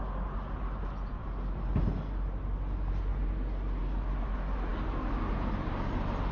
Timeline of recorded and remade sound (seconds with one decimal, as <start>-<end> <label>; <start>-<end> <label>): 0.0-6.3 recorded